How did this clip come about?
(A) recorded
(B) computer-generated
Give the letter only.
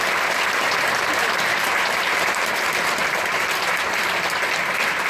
A